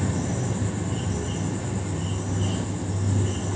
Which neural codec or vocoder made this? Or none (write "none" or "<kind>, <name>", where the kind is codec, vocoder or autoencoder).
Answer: none